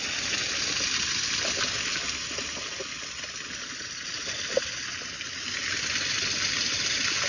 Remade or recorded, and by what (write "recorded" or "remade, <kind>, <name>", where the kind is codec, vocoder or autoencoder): recorded